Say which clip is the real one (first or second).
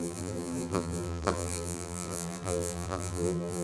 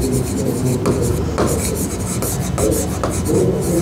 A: second